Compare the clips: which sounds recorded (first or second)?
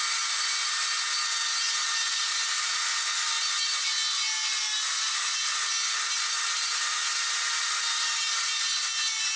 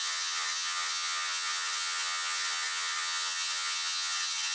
first